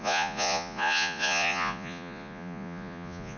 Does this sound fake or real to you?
fake